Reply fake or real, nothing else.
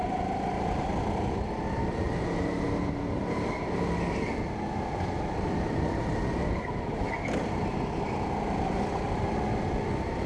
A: real